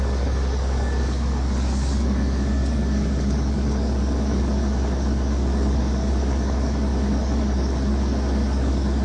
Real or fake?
fake